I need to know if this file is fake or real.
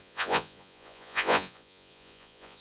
fake